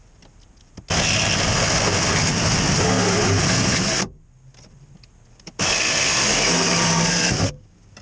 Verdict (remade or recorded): recorded